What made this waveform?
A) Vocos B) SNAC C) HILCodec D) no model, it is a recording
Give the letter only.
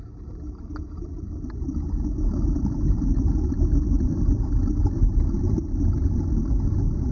D